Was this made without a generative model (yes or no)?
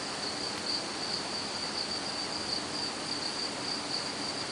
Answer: yes